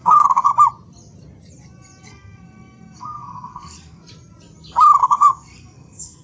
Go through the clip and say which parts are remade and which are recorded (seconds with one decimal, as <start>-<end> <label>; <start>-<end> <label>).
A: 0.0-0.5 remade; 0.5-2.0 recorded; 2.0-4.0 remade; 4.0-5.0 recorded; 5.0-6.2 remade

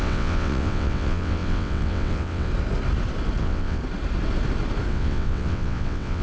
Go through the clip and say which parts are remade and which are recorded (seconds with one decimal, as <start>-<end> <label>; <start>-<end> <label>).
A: 0.0-2.5 remade; 2.5-3.4 recorded; 3.4-3.8 remade; 3.8-4.9 recorded; 4.9-6.2 remade

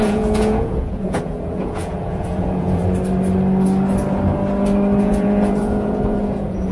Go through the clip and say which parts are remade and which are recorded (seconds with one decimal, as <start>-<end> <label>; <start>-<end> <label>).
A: 0.0-2.8 remade; 2.8-5.0 recorded; 5.0-6.7 remade

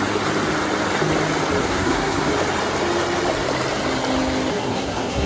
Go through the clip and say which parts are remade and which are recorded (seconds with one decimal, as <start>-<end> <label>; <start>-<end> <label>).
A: 0.0-1.6 recorded; 1.6-2.3 remade; 2.3-4.5 recorded; 4.5-5.3 remade

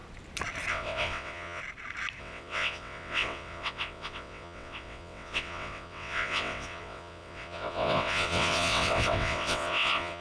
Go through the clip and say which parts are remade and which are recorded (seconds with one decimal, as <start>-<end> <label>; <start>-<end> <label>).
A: 0.0-0.7 recorded; 0.7-1.6 remade; 1.6-2.2 recorded; 2.2-10.2 remade

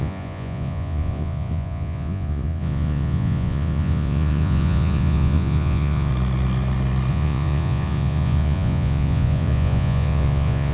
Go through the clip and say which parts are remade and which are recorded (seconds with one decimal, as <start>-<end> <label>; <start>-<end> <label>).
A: 0.0-6.1 remade; 6.1-7.1 recorded; 7.1-10.7 remade